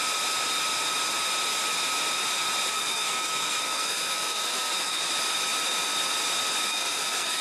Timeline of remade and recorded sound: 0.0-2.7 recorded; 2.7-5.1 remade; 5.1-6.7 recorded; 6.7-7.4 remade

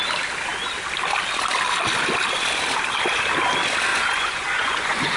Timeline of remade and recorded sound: 0.0-3.9 recorded; 3.9-5.2 remade

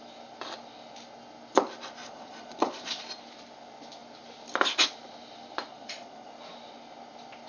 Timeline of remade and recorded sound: 0.0-2.0 recorded; 2.0-3.0 remade; 3.0-5.7 recorded; 5.7-6.3 remade; 6.3-7.5 recorded

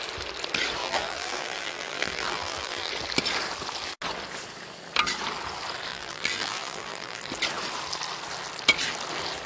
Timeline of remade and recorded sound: 0.0-0.8 recorded; 0.8-2.9 remade; 2.9-5.9 recorded; 5.9-7.3 remade; 7.3-9.5 recorded

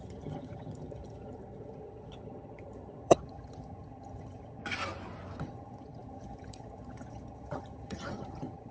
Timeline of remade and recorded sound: 0.0-4.6 remade; 4.6-5.4 recorded; 5.4-8.7 remade

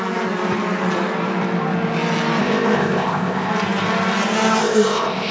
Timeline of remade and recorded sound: 0.0-2.4 recorded; 2.4-3.5 remade; 3.5-4.6 recorded; 4.6-5.3 remade

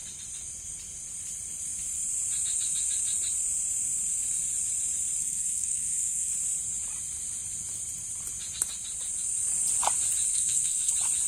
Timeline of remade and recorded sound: 0.0-5.2 recorded; 5.2-6.3 remade; 6.3-10.3 recorded; 10.3-10.9 remade; 10.9-11.3 recorded